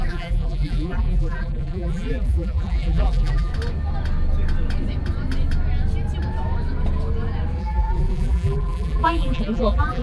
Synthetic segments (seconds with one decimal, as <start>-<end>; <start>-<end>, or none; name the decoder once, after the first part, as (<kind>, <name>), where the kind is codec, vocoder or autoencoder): 0.0-3.5 (vocoder, BigVGAN v2); 7.6-10.0